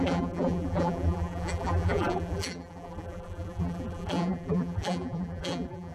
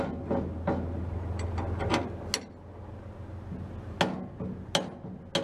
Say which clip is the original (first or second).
second